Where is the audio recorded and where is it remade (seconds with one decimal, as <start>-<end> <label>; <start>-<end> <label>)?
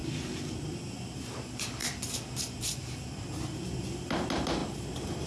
0.0-5.3 recorded